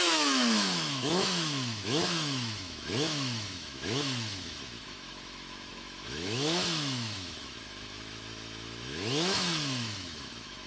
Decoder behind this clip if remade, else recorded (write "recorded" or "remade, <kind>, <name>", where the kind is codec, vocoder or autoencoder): remade, autoencoder, DAC-VAE